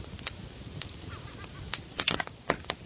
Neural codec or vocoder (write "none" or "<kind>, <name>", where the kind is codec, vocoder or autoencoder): none